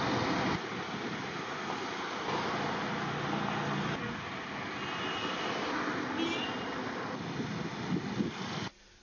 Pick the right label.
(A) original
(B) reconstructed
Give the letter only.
A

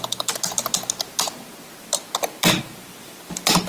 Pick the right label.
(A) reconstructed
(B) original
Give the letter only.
B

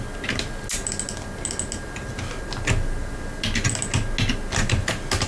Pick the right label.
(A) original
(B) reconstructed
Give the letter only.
A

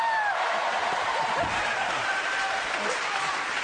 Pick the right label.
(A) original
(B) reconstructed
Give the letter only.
B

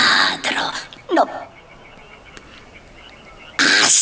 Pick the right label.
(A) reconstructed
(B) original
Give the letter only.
B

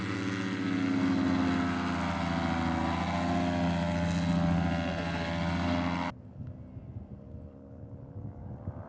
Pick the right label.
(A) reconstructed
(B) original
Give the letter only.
B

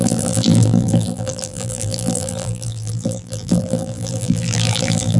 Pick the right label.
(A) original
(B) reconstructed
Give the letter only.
B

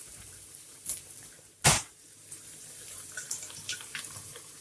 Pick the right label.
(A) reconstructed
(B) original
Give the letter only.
A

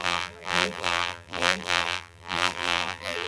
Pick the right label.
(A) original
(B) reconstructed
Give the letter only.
B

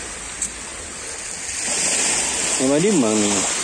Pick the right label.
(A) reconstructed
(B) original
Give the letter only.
B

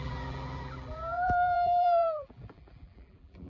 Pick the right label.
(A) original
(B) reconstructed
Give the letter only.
B